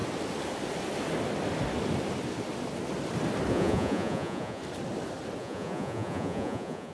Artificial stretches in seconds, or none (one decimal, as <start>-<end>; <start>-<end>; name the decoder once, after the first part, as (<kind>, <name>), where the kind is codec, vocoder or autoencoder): 3.5-4.6 (vocoder, Vocos); 5.4-6.9